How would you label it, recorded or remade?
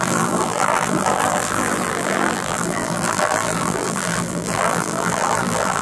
remade